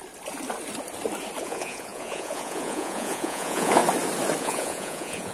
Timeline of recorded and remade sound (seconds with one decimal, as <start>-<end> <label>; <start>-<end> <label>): 0.0-1.4 recorded; 1.4-3.8 remade; 3.8-4.4 recorded; 4.4-5.3 remade